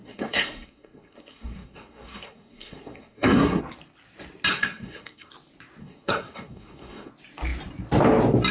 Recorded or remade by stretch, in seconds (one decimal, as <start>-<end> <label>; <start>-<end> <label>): 0.0-3.6 remade; 3.6-4.5 recorded; 4.5-5.3 remade; 5.3-5.8 recorded; 5.8-7.1 remade; 7.1-8.5 recorded